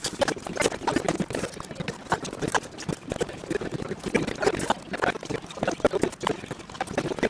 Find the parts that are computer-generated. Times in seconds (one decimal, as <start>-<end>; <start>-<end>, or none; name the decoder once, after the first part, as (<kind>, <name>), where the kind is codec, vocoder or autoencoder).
none